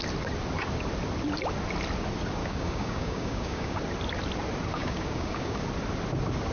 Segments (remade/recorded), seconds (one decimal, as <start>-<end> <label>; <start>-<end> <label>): 0.0-2.4 recorded; 2.4-3.8 remade; 3.8-4.7 recorded; 4.7-5.6 remade; 5.6-6.5 recorded